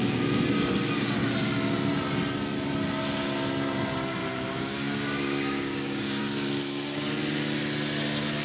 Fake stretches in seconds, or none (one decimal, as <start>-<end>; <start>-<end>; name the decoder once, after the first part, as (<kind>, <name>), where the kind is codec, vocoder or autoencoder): 4.2-6.2 (codec, DAC)